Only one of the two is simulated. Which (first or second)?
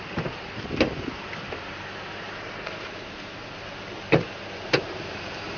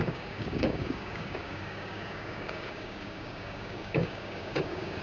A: second